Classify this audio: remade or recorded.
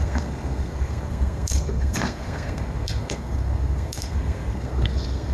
remade